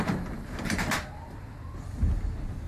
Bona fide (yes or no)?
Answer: yes